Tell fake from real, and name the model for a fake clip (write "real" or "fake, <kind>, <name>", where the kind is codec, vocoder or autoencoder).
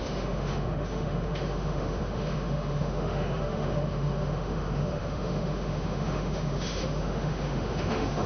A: fake, autoencoder, DAC-VAE